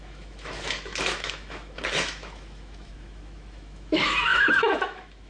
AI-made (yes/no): yes